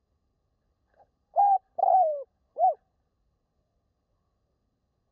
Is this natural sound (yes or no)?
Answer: no